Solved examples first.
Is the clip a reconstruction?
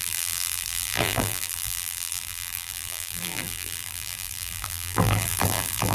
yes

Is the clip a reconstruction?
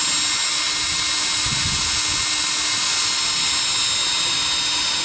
no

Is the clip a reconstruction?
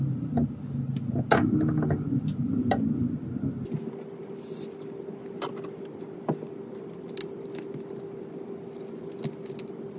no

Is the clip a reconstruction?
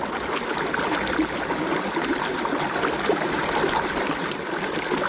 no